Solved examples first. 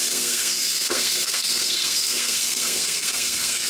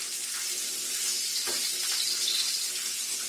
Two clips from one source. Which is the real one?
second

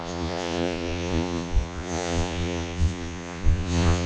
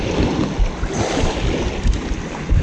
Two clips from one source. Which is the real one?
second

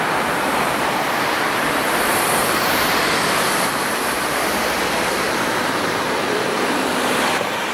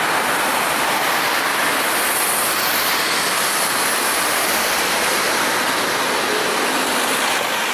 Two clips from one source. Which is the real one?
second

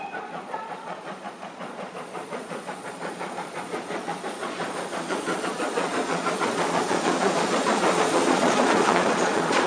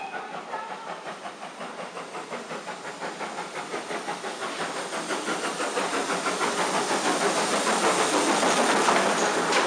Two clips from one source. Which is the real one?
second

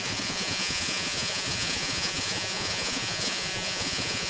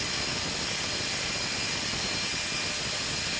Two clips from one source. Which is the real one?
second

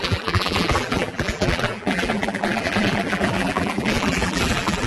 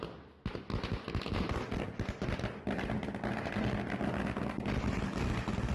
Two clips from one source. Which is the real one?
second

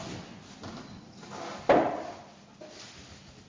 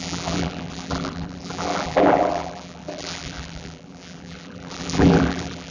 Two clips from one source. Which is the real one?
first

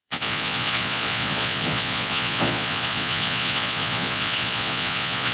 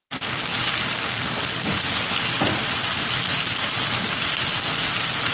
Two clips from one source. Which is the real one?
second